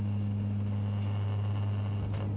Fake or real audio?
real